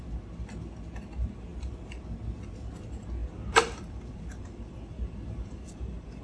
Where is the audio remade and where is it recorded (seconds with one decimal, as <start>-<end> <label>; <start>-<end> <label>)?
0.0-3.2 recorded; 3.2-6.2 remade